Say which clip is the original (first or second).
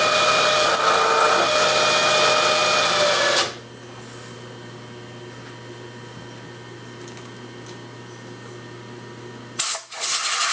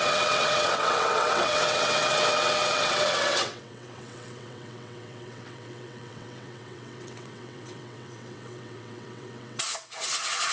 first